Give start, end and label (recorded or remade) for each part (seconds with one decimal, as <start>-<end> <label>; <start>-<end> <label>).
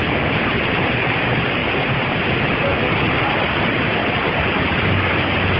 0.0-1.6 recorded; 1.6-2.3 remade; 2.3-4.0 recorded; 4.0-4.6 remade; 4.6-5.6 recorded